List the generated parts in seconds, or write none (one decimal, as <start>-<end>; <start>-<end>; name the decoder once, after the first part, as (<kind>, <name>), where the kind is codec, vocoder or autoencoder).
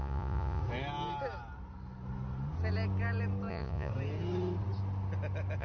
0.0-0.6 (vocoder, Vocos); 3.5-3.9